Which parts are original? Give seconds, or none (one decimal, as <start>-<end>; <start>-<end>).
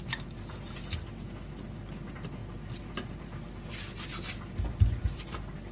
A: 0.0-5.7